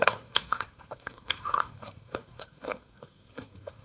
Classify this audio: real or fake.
fake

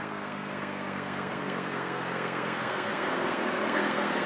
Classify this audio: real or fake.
fake